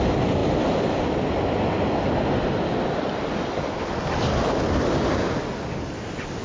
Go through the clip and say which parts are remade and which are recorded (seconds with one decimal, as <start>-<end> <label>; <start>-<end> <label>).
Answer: 0.0-6.4 recorded